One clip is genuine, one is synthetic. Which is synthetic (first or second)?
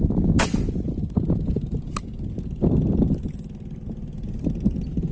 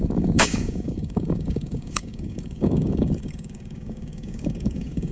second